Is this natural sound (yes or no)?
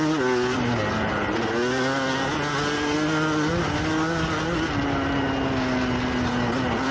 yes